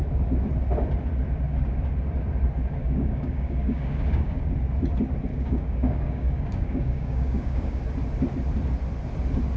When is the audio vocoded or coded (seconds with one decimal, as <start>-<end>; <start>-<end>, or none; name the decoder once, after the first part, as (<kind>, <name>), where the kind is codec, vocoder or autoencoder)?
2.8-4.5 (codec, DAC); 5.3-7.8